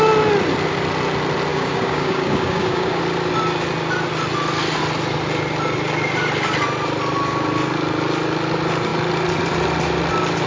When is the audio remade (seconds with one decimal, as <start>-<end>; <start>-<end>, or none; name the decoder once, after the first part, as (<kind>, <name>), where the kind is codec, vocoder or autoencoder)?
1.5-3.0 (codec, DAC)